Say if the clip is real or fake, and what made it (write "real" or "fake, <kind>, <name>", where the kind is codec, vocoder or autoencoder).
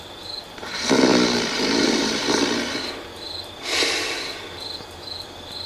real